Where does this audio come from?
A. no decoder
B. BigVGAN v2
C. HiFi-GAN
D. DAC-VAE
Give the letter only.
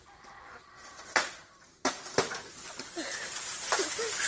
A